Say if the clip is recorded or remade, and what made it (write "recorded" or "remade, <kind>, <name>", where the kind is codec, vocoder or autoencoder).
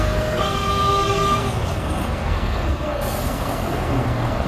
remade, codec, SNAC